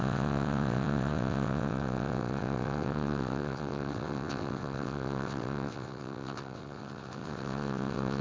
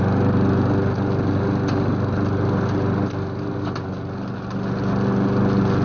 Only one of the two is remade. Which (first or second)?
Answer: first